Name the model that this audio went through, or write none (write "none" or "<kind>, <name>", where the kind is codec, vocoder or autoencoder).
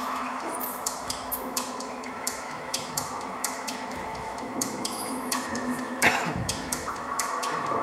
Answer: autoencoder, DAC-VAE